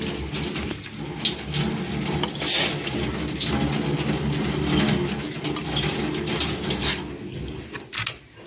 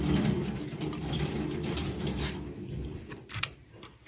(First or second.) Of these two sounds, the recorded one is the first